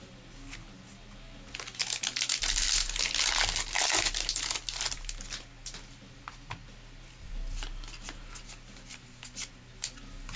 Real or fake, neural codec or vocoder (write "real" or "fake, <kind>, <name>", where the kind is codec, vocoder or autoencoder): real